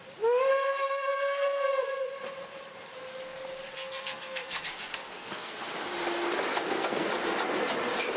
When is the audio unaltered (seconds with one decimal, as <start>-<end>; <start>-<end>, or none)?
0.0-0.5; 1.8-3.7; 5.6-6.5; 7.1-8.2